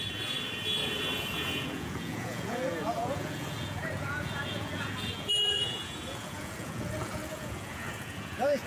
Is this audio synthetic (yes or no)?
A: yes